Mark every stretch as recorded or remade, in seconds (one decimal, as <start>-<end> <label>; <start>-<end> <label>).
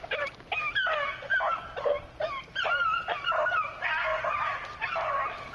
0.0-4.1 recorded; 4.1-5.1 remade; 5.1-5.5 recorded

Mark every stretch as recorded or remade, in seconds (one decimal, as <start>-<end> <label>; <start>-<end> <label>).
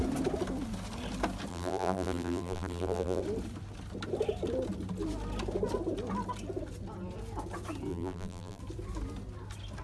0.0-1.5 recorded; 1.5-3.2 remade; 3.2-7.9 recorded; 7.9-8.6 remade; 8.6-9.8 recorded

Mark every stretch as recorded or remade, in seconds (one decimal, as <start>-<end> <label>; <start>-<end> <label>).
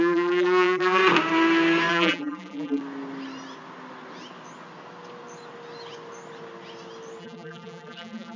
0.0-1.0 remade; 1.0-1.9 recorded; 1.9-2.8 remade; 2.8-7.2 recorded; 7.2-8.4 remade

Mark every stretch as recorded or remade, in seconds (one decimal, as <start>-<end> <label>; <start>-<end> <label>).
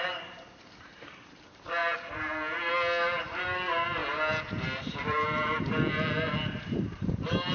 0.0-4.0 remade; 4.0-4.6 recorded; 4.6-7.5 remade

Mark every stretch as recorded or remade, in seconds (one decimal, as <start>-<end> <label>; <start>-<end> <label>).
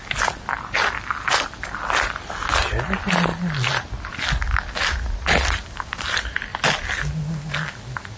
0.0-8.2 recorded